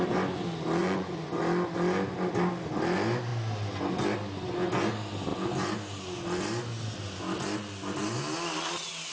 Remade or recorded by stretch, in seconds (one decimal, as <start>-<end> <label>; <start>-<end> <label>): 0.0-0.8 recorded; 0.8-1.4 remade; 1.4-9.1 recorded